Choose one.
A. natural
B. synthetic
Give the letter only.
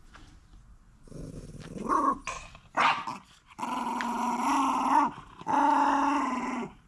A